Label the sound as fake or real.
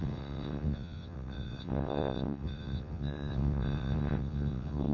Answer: fake